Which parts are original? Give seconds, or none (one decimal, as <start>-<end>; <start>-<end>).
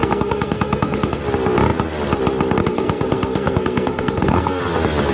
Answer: 1.2-2.6; 4.6-5.1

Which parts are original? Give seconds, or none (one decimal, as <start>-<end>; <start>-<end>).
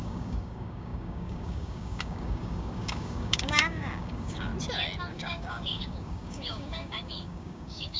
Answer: 4.5-5.1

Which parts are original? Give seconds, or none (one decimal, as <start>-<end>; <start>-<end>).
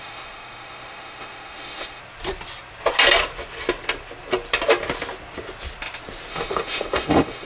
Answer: 2.0-6.3